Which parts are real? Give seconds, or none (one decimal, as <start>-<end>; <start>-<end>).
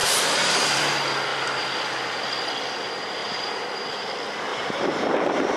0.0-3.2; 4.1-4.5